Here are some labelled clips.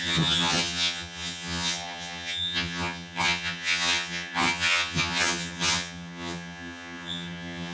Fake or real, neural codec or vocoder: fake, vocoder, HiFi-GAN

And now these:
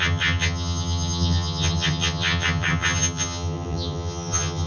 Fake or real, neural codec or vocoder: fake, vocoder, HiFi-GAN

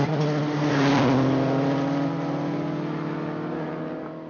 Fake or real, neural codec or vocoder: real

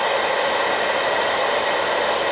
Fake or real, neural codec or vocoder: real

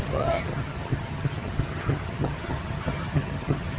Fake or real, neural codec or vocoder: fake, vocoder, HiFi-GAN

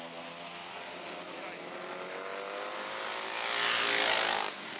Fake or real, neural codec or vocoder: real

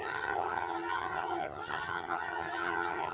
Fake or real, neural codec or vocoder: fake, vocoder, HiFi-GAN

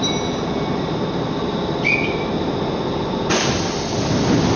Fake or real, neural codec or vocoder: real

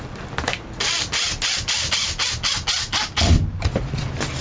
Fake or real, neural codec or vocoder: real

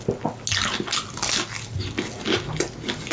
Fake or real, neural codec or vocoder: real